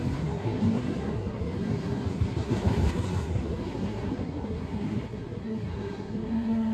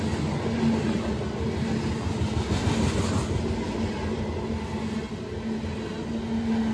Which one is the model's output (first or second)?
first